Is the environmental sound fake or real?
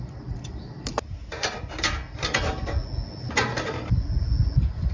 real